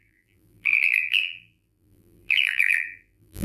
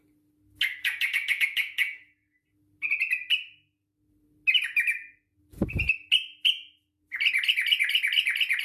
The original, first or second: second